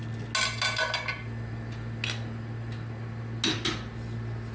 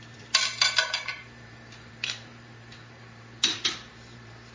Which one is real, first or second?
first